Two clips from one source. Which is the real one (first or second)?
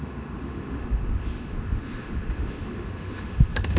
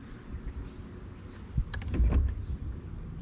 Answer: second